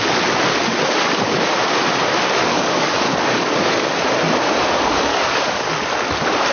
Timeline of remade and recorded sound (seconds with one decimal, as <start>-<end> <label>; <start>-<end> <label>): 0.0-2.4 recorded; 2.4-4.0 remade; 4.0-5.1 recorded; 5.1-5.6 remade; 5.6-6.5 recorded